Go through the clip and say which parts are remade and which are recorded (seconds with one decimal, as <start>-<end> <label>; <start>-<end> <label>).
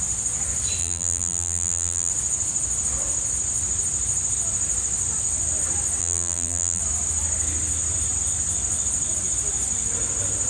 0.0-0.8 recorded; 0.8-2.1 remade; 2.1-6.0 recorded; 6.0-6.8 remade; 6.8-10.5 recorded